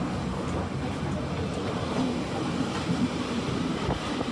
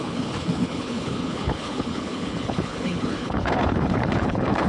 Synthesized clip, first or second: second